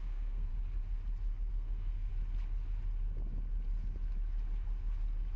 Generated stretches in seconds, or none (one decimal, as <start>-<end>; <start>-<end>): 0.0-0.5; 1.5-2.1

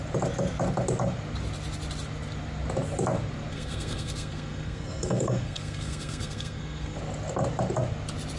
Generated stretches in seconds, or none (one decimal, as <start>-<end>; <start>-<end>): 3.5-7.0